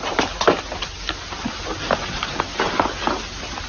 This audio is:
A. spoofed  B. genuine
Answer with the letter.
B